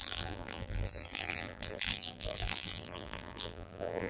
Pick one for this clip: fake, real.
fake